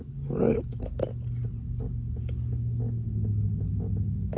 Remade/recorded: recorded